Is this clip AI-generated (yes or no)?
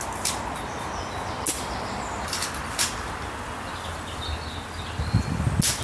no